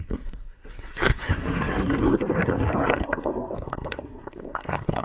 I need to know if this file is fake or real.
fake